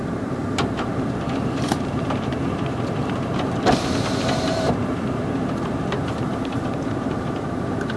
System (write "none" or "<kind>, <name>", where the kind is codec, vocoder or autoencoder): vocoder, BigVGAN v2